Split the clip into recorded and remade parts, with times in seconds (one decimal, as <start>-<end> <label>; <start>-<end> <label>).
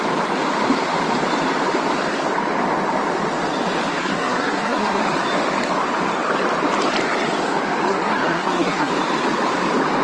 0.0-4.0 recorded; 4.0-5.0 remade; 5.0-7.9 recorded; 7.9-8.9 remade; 8.9-10.0 recorded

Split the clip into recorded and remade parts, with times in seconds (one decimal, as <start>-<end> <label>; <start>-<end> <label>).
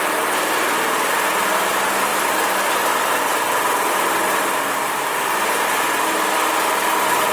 0.0-7.3 recorded